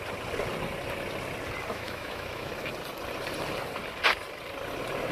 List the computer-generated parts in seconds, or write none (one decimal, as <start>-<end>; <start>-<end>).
1.7-2.5

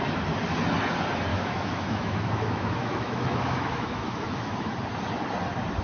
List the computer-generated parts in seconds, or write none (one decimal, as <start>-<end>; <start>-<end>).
1.3-4.7

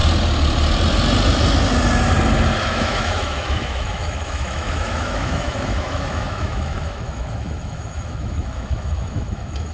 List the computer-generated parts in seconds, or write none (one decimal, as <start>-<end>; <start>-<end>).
2.6-9.7

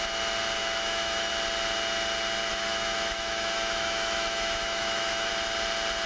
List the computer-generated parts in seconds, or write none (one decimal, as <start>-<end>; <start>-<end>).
0.6-1.3; 2.5-5.3

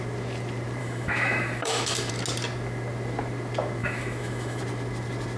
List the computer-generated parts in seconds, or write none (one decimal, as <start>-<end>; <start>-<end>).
0.8-2.1; 3.8-4.6

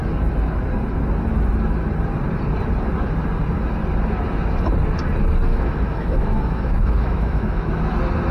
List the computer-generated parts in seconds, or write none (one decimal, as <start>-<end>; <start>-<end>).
5.5-7.7

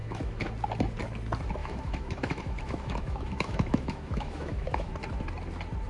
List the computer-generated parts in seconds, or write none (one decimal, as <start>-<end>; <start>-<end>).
0.0-0.5; 1.6-4.9

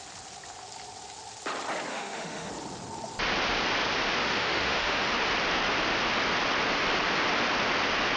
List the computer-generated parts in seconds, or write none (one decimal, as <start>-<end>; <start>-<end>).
1.9-2.5; 4.2-5.1